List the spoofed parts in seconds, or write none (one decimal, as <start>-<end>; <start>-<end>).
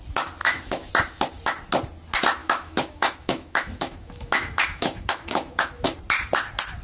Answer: 0.4-0.9; 2.4-6.0